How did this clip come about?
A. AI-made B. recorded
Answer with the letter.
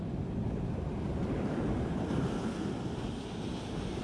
B